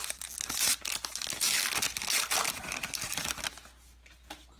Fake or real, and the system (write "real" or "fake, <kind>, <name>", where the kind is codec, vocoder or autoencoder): real